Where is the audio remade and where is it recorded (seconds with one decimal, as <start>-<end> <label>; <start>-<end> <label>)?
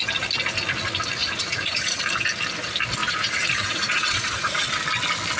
0.0-1.2 recorded; 1.2-2.0 remade; 2.0-3.0 recorded; 3.0-4.7 remade; 4.7-5.4 recorded